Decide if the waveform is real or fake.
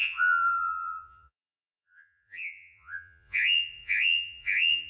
fake